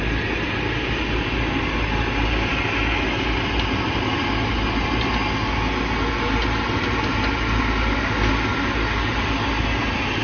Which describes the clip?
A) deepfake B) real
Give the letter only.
B